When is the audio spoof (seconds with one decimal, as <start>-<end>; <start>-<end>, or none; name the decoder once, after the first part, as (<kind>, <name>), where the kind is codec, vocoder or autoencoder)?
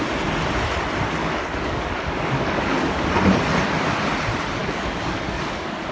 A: 1.2-3.1 (codec, DAC); 4.6-5.9